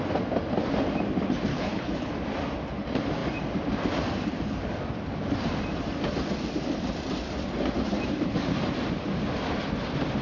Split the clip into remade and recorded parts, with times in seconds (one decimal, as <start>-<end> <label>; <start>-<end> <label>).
0.0-1.5 recorded; 1.5-2.1 remade; 2.1-10.2 recorded